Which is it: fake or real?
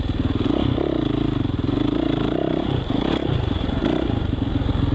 real